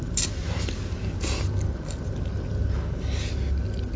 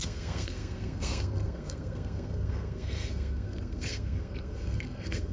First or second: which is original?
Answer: first